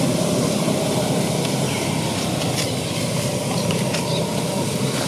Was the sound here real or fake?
real